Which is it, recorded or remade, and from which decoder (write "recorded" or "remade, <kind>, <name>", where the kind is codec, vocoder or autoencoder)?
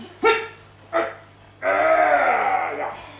recorded